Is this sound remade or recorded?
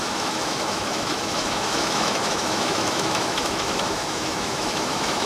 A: remade